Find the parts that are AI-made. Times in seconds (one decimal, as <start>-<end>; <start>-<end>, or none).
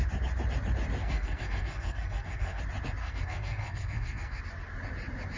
1.0-2.6; 3.0-4.4